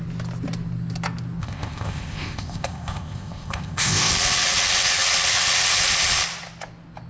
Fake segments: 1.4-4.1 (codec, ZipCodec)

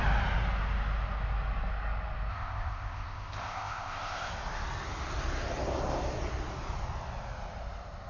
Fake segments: 2.3-4.3 (codec, ZipCodec)

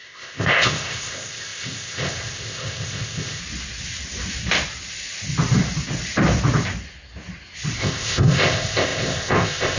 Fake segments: 0.0-3.4 (codec, ZipCodec); 7.8-9.8